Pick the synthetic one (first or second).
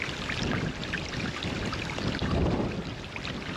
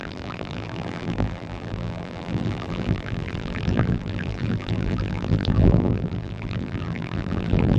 second